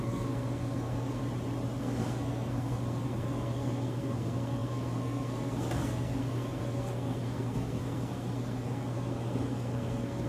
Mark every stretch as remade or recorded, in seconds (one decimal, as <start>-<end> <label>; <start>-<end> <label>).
0.0-1.2 remade; 1.2-1.8 recorded; 1.8-10.3 remade